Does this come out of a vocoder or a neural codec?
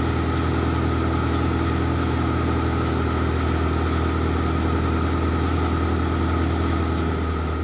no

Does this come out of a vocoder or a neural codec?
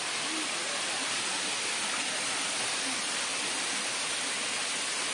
no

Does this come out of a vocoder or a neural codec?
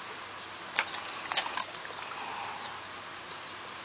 no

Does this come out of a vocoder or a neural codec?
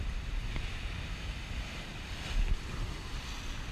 no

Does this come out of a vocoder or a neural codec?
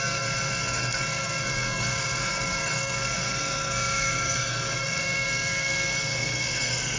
yes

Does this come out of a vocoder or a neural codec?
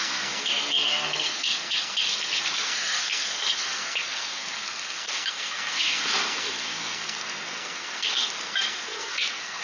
yes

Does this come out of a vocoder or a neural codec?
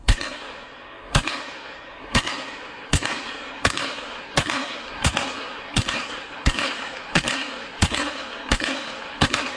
yes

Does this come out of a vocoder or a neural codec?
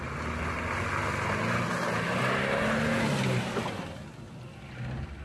no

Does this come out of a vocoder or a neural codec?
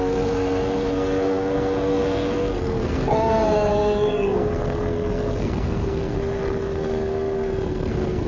yes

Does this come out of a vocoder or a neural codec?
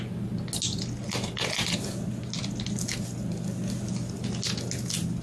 no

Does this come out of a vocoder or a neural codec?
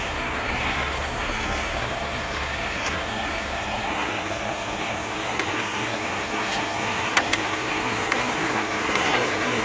yes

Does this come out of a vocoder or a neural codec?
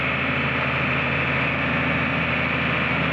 no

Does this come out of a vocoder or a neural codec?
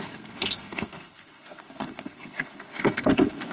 yes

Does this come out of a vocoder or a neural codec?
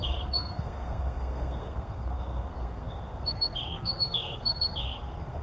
yes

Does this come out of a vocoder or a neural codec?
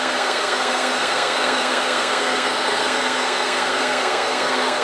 yes